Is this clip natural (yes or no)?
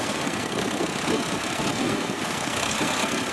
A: no